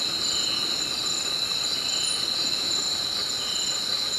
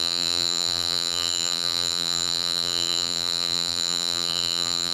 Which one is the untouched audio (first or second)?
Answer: first